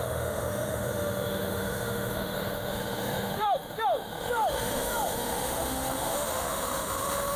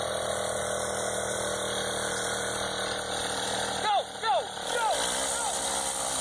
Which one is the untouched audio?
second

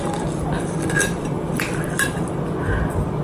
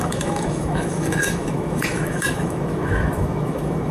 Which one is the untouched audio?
first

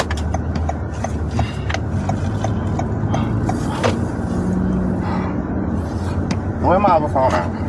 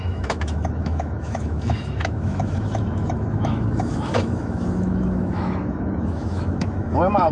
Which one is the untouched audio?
first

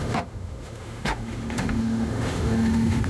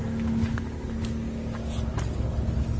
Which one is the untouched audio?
second